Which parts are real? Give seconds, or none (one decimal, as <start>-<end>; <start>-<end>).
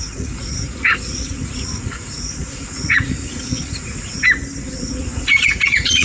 4.2-4.8